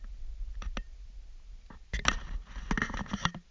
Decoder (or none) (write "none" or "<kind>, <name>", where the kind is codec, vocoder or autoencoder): none